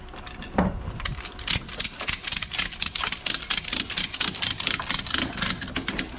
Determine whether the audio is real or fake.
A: real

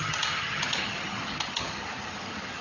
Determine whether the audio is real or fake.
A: fake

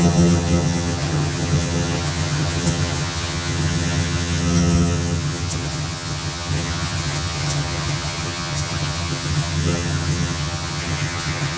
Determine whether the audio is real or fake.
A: fake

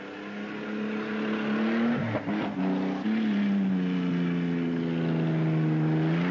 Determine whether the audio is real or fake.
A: real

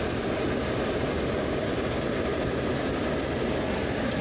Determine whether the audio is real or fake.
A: real